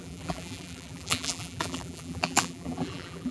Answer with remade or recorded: remade